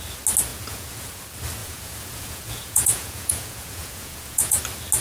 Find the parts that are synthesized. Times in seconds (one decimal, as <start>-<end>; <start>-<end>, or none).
0.5-1.2; 1.6-4.6